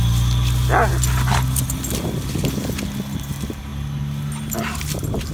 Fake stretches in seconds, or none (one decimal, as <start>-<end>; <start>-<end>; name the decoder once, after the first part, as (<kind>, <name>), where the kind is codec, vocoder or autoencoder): none